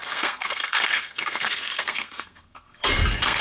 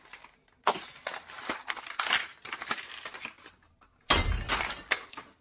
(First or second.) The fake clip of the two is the first